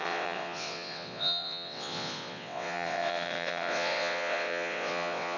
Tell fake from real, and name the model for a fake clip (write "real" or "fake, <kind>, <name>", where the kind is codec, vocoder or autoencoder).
fake, vocoder, WaveNeXt